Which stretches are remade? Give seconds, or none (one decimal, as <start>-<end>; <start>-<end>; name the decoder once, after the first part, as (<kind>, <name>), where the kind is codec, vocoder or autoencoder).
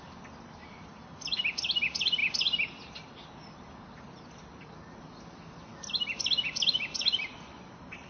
none